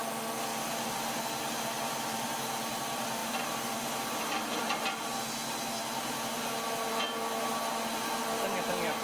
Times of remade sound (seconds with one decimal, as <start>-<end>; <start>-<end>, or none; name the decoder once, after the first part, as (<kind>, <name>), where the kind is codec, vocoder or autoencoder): 0.5-1.2 (vocoder, BigVGAN v2); 3.2-4.5